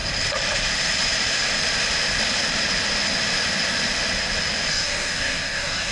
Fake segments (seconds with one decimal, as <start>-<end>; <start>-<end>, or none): 4.7-5.9